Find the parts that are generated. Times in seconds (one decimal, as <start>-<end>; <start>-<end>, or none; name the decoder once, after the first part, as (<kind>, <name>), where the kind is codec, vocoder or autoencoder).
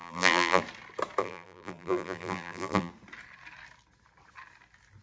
0.0-0.6 (vocoder, BigVGAN v2); 1.2-2.9